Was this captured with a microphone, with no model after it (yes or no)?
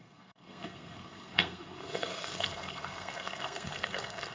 no